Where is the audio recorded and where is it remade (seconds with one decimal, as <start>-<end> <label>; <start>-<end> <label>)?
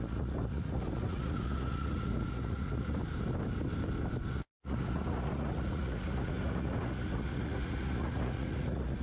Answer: 0.0-3.0 remade; 3.0-4.3 recorded; 4.3-9.0 remade